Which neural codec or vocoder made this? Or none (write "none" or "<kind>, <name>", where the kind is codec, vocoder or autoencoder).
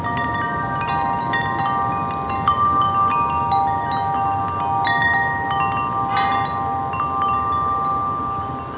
none